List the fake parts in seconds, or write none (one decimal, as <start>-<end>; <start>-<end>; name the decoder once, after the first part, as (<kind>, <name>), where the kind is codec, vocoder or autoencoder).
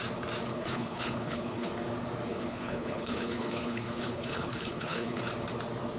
0.5-1.7 (codec, HILCodec); 2.3-5.2